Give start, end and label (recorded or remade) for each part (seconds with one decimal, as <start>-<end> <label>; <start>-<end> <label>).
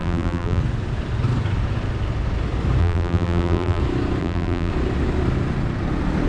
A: 0.0-0.6 remade; 0.6-2.8 recorded; 2.8-3.8 remade; 3.8-4.2 recorded; 4.2-4.7 remade; 4.7-6.3 recorded